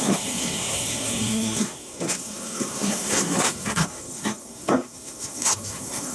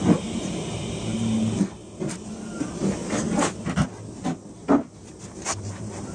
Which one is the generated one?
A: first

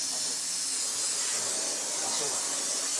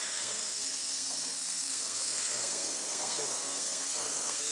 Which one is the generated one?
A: second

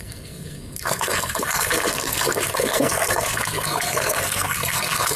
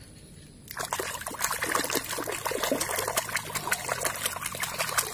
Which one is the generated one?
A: first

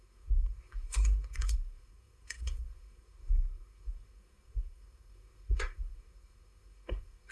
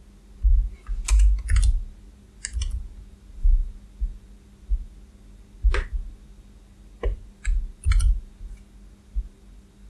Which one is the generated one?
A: first